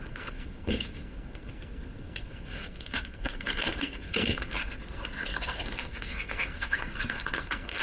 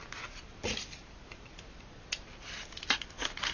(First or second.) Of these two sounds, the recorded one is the second